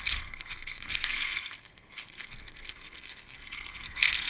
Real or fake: fake